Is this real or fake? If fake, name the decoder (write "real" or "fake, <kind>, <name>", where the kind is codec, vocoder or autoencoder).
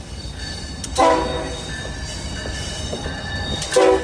real